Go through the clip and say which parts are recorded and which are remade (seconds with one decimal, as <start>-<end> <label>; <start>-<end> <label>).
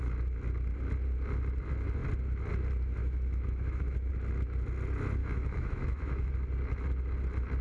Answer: 0.0-3.0 recorded; 3.0-4.1 remade; 4.1-5.2 recorded; 5.2-6.3 remade; 6.3-7.6 recorded